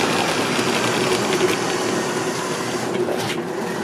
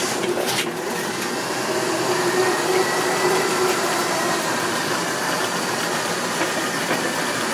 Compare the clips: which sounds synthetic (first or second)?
second